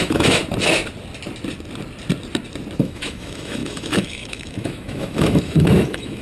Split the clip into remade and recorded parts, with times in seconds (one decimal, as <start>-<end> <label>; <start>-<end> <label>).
0.0-0.4 remade; 0.4-2.8 recorded; 2.8-6.2 remade